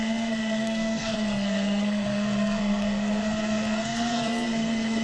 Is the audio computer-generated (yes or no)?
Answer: yes